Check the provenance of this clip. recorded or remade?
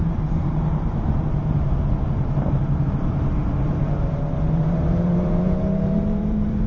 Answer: remade